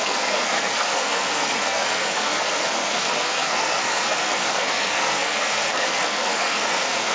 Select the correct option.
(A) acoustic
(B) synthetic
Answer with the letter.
B